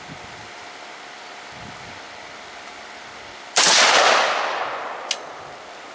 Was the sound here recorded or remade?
recorded